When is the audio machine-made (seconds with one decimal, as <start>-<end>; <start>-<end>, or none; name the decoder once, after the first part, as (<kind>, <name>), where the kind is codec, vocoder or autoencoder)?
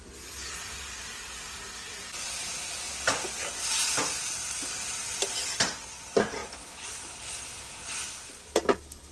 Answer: none